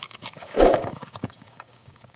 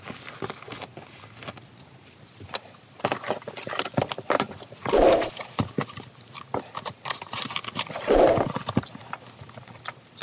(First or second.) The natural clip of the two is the second